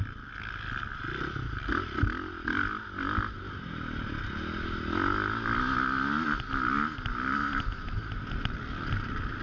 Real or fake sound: real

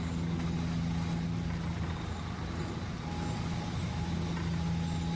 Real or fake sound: real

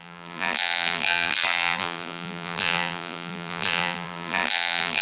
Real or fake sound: fake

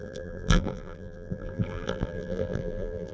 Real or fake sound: fake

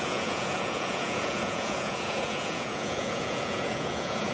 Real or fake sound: fake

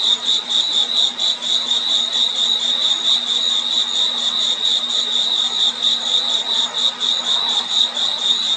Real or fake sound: real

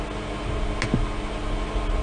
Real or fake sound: real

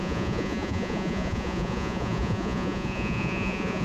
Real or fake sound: fake